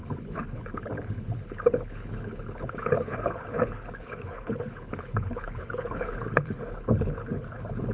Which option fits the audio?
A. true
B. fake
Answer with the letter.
B